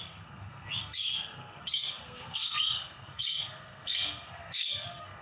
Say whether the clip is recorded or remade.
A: remade